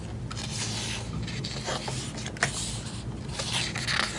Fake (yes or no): no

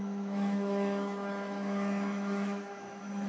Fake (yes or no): yes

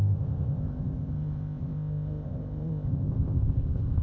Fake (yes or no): yes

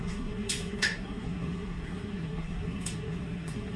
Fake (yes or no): yes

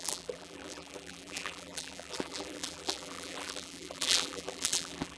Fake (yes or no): yes